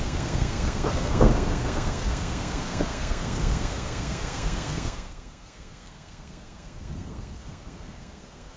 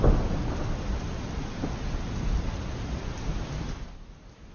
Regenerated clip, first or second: first